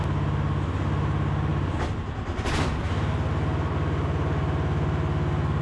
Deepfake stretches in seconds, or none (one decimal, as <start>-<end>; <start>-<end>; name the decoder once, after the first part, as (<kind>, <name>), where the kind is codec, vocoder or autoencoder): 1.5-2.4 (vocoder, BigVGAN v2)